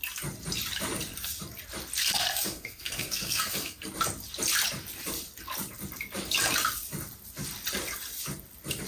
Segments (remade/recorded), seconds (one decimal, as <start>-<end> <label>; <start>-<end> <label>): 0.0-2.0 recorded; 2.0-3.8 remade; 3.8-8.9 recorded